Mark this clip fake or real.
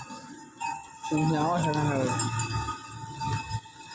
real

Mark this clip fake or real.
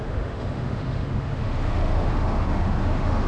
fake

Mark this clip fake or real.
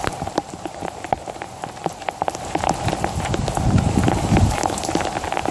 real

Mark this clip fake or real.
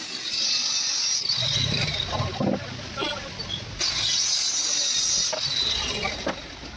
real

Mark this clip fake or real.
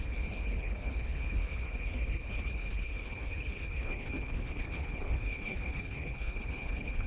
fake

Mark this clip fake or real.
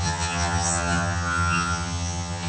fake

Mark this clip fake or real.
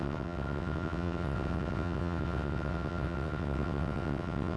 fake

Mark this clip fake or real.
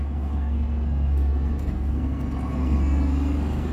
fake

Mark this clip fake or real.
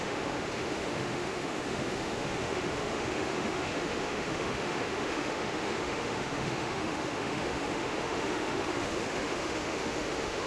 fake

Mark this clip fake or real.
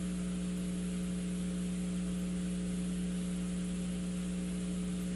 real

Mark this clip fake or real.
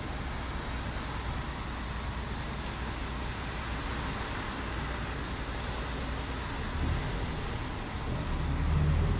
real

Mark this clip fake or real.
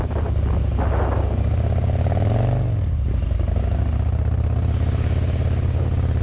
real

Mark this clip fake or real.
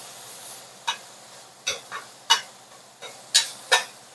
real